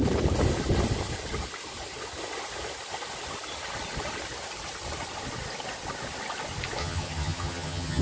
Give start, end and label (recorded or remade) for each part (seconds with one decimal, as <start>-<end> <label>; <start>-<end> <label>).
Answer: 0.0-6.8 recorded; 6.8-8.0 remade